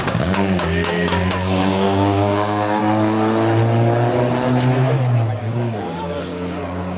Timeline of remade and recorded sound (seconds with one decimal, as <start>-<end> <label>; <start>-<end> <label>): 0.0-2.8 remade; 2.8-5.4 recorded; 5.4-7.0 remade

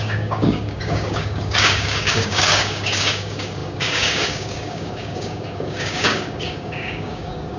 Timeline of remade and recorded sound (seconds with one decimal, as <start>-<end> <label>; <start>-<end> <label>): 0.0-7.6 remade